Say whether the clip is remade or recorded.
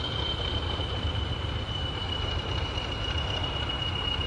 remade